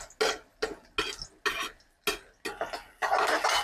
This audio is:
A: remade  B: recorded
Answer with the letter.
B